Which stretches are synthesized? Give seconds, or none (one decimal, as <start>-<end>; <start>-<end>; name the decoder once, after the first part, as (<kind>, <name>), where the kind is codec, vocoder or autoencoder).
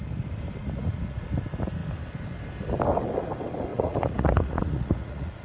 0.6-1.2 (vocoder, Vocos); 3.7-5.4